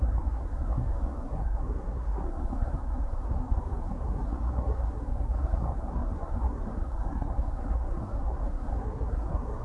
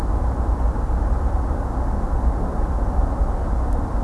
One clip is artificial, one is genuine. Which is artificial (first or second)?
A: first